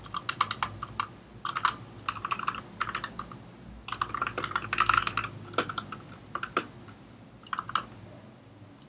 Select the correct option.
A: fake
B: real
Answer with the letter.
B